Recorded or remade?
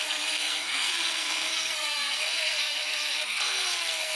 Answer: remade